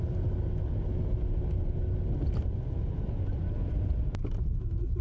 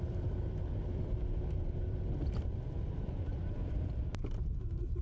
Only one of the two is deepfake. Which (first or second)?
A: second